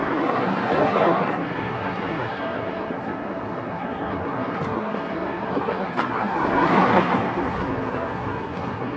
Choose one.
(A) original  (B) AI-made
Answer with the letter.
B